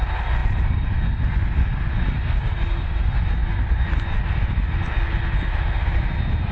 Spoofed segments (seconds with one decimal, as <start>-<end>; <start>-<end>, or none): none